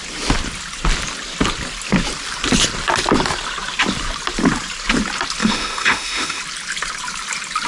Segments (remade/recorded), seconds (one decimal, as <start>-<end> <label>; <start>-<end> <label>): 0.0-5.4 recorded; 5.4-6.4 remade; 6.4-7.7 recorded